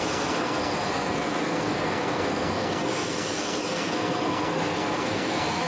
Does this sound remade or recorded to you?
remade